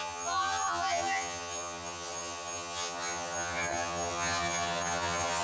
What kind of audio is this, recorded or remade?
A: remade